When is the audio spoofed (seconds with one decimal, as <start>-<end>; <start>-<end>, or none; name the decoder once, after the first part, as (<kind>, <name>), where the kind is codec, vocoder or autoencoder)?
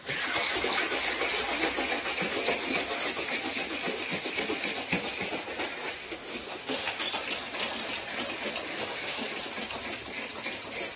6.0-7.0 (autoencoder, DAC-VAE); 8.7-9.4